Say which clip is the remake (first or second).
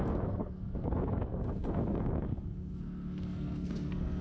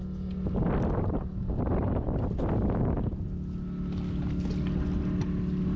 first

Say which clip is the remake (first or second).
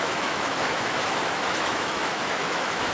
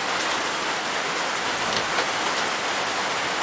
first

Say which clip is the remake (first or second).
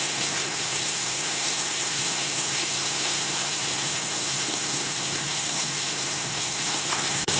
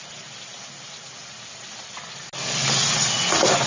first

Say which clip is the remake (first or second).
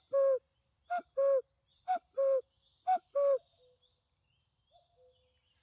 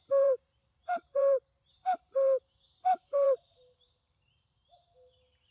second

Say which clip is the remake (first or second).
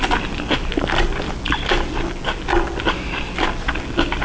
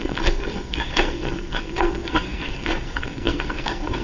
second